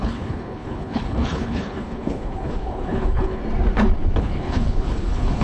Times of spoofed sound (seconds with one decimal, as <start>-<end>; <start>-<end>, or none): 0.0-3.4; 4.2-5.4